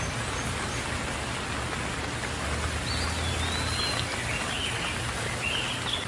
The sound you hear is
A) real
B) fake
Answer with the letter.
A